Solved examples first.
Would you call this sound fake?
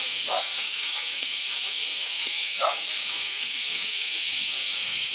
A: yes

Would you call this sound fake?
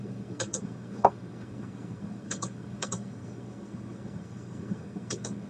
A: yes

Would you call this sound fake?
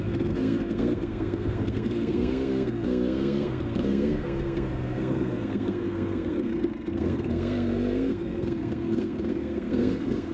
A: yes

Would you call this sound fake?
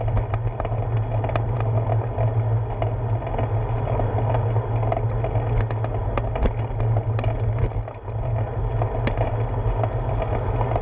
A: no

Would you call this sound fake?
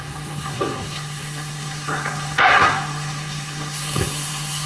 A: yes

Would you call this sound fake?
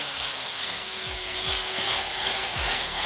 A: yes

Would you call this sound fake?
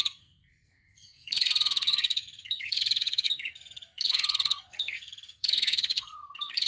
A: yes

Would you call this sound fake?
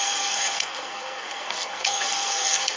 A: yes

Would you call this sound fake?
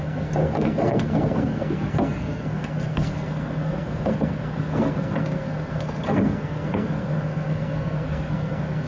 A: yes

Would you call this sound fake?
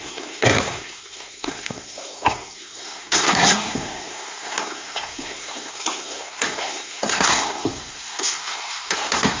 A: yes